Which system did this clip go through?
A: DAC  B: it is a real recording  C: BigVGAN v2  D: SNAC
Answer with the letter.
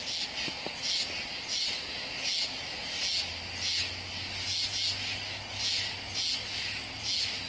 B